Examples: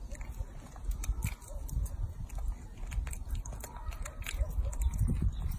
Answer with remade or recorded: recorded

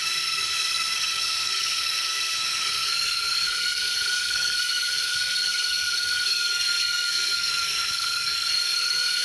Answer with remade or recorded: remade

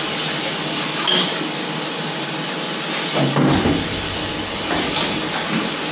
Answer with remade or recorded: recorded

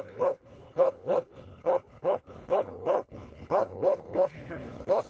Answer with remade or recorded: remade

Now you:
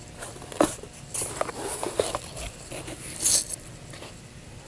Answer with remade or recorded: recorded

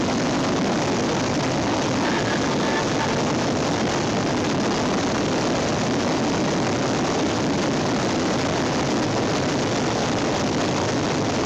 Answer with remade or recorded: recorded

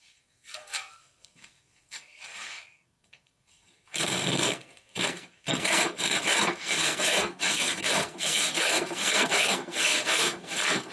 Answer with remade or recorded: remade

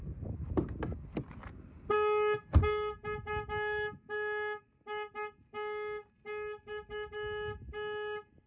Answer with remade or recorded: recorded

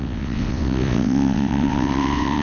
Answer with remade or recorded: remade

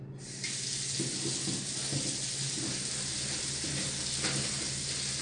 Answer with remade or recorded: recorded